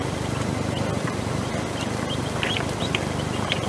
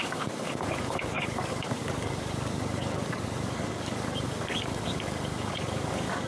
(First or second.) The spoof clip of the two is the second